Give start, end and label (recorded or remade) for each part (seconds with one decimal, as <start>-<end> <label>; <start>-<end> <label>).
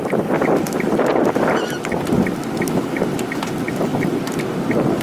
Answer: 0.0-3.9 recorded; 3.9-4.4 remade; 4.4-5.0 recorded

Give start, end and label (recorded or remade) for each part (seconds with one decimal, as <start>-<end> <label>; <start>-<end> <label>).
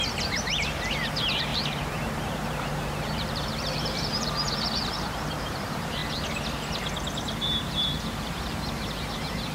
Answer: 0.0-6.0 remade; 6.0-7.4 recorded; 7.4-9.5 remade